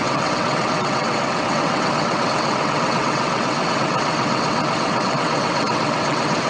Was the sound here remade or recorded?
remade